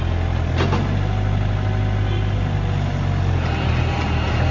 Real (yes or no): yes